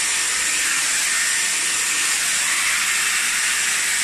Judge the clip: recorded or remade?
recorded